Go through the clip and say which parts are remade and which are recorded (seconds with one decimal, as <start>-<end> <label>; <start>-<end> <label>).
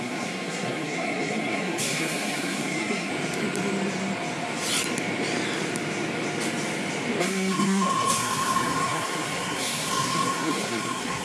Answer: 0.0-3.1 remade; 3.1-7.2 recorded; 7.2-11.2 remade